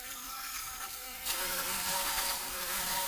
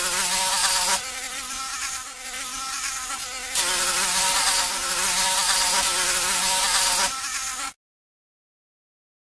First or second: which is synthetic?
first